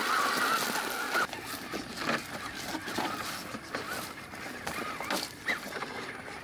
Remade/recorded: recorded